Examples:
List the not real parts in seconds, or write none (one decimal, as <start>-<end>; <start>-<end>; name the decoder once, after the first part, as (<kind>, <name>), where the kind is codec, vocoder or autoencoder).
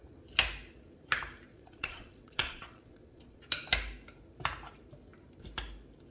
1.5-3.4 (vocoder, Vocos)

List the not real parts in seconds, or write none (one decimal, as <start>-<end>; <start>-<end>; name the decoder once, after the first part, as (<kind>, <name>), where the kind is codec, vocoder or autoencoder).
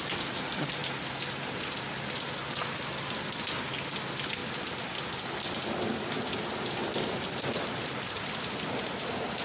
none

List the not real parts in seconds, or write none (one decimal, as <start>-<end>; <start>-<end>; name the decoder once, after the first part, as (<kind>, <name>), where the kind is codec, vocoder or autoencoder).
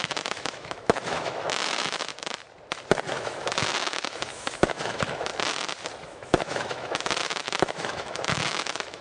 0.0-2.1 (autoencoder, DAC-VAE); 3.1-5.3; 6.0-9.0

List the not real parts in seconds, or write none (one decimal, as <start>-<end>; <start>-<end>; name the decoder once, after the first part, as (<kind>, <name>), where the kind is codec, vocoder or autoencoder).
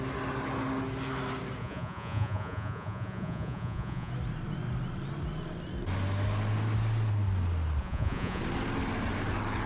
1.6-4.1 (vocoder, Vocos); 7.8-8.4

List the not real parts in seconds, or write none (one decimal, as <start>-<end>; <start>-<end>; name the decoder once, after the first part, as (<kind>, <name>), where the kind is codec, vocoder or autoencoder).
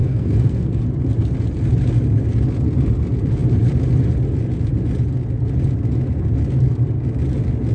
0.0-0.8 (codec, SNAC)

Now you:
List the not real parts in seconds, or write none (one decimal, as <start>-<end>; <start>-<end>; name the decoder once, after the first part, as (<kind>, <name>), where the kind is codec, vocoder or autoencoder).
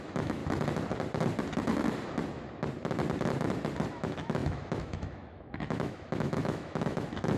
0.0-0.4 (autoencoder, DAC-VAE); 3.9-7.4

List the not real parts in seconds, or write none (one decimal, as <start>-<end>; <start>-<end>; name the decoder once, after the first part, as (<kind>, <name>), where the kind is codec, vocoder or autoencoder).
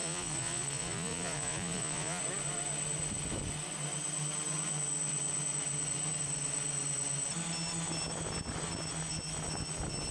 0.0-2.2 (vocoder, Vocos)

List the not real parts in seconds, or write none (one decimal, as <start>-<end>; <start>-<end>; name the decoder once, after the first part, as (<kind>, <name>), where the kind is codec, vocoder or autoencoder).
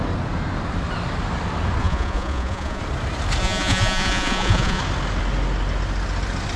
1.8-2.8 (vocoder, Vocos); 3.4-4.8